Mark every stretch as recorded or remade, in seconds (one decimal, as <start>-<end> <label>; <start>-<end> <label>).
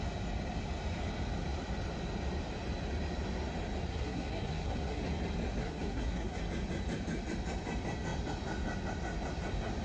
0.0-3.9 recorded; 3.9-5.0 remade; 5.0-5.6 recorded; 5.6-6.4 remade; 6.4-9.8 recorded